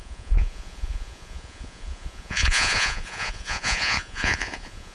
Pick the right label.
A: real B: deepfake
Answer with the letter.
B